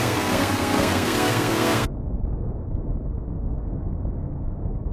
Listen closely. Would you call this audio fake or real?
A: fake